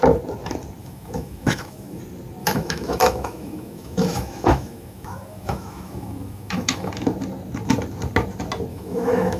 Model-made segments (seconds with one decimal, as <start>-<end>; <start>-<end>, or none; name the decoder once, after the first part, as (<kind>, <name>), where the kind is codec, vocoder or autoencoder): 0.8-2.0 (autoencoder, DAC-VAE); 2.4-6.9; 8.7-9.4

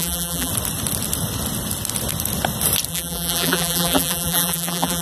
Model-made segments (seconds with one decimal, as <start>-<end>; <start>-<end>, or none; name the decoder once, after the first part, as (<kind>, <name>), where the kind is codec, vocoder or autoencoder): 0.0-0.5 (vocoder, BigVGAN v2); 2.9-5.0

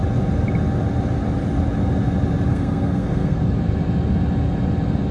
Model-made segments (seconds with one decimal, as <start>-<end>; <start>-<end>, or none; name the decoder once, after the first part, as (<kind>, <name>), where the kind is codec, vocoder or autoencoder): 2.5-3.4 (codec, SNAC)

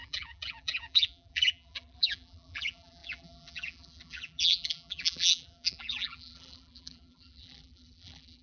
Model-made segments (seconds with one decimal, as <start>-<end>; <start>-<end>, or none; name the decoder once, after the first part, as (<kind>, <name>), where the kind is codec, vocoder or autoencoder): 0.0-8.4 (vocoder, BigVGAN v2)

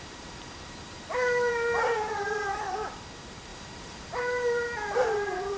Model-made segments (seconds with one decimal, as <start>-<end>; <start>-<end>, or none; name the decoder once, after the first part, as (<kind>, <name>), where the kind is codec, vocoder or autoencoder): 0.0-5.6 (vocoder, BigVGAN v2)

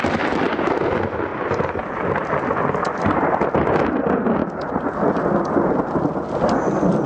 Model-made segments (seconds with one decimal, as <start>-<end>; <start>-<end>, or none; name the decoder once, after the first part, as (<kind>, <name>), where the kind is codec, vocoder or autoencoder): 4.4-5.1 (vocoder, BigVGAN v2)